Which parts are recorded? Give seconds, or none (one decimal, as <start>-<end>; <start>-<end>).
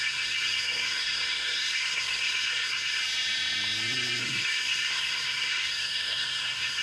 3.0-4.2